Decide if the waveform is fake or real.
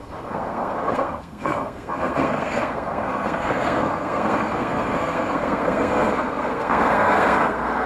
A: fake